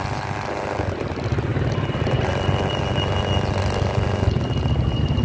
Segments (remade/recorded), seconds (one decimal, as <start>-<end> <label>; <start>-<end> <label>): 0.0-5.2 recorded